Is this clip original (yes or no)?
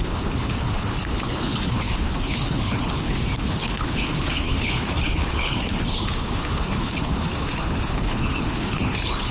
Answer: no